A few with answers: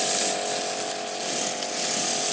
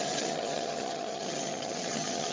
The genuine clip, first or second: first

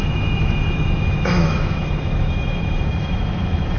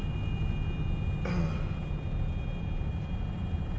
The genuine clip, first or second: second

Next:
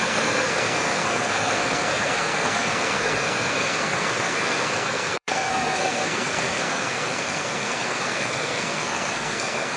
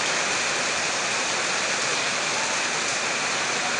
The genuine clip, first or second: second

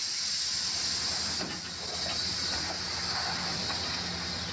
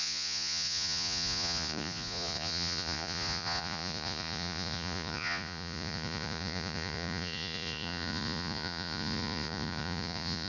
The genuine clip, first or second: first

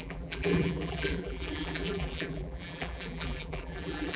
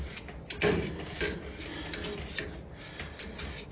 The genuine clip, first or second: second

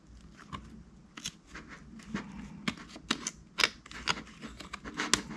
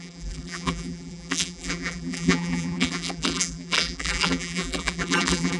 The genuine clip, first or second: first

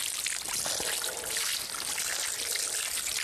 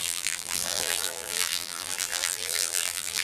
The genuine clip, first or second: first